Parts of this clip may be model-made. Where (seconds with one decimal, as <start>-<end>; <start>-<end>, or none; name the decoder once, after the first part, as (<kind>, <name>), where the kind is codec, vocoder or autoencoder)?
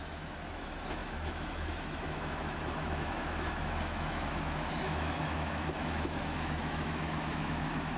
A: 0.0-8.0 (autoencoder, DAC-VAE)